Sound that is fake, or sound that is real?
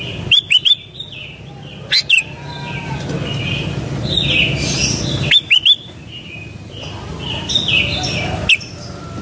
real